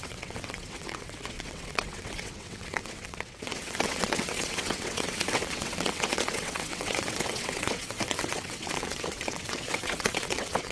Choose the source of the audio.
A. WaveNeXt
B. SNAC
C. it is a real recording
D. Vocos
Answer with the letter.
A